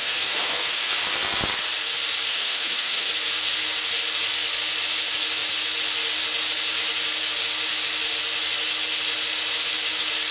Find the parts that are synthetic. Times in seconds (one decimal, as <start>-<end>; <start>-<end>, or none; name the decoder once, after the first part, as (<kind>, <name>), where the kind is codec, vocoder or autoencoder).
0.0-0.9 (autoencoder, DAC-VAE); 2.3-3.1